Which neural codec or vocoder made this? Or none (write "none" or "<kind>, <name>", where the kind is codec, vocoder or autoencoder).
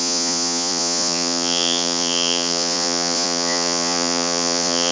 vocoder, Vocos